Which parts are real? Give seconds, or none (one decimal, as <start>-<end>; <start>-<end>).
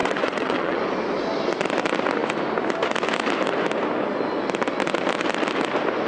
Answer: 0.8-6.1